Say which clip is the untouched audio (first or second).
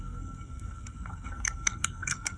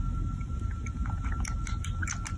second